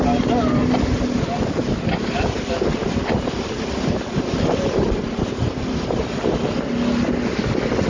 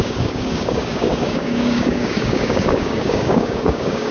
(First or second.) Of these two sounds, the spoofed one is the second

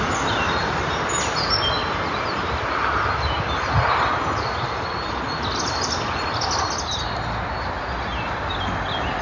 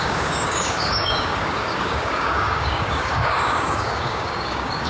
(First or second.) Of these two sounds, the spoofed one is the second